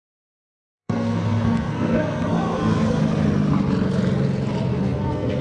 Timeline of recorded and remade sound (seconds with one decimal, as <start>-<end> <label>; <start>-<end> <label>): 0.0-3.0 remade; 3.0-4.7 recorded; 4.7-5.4 remade